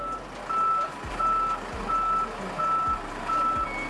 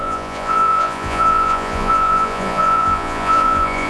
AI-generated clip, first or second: second